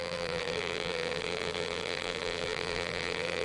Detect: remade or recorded remade